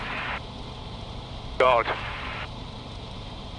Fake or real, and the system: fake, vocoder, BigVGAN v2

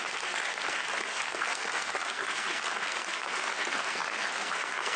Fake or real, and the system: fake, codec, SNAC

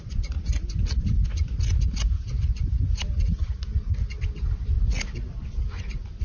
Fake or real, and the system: real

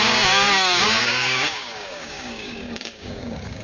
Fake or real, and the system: fake, codec, DAC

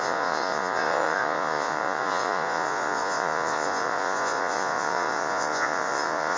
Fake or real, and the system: fake, vocoder, Vocos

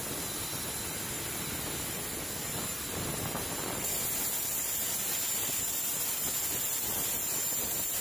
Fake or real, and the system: real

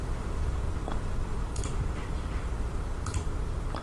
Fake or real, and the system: fake, vocoder, BigVGAN v2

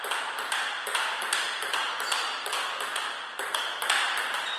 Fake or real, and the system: fake, vocoder, BigVGAN v2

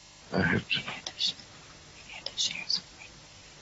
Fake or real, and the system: real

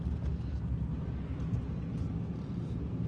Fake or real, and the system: real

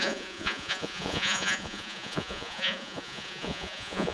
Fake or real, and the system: fake, vocoder, Vocos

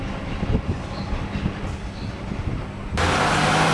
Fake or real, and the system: real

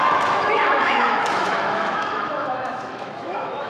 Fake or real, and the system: fake, autoencoder, DAC-VAE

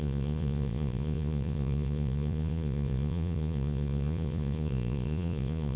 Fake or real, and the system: fake, vocoder, Vocos